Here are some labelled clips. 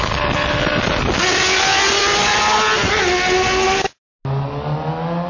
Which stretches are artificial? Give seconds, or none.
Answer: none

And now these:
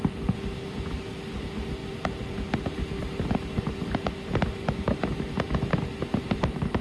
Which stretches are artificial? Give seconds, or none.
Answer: none

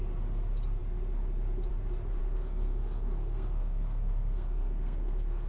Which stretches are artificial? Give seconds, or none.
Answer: 2.2-5.5 (codec, SNAC)